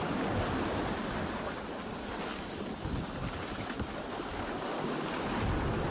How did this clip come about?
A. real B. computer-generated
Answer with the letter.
A